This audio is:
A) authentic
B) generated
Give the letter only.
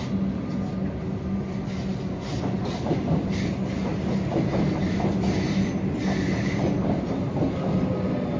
A